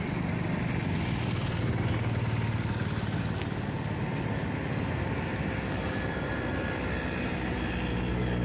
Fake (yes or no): no